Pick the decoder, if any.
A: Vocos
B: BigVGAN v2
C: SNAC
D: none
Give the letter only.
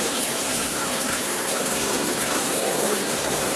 C